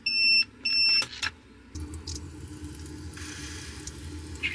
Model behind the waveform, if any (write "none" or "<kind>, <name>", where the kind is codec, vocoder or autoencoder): none